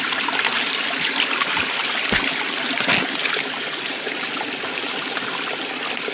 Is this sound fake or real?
real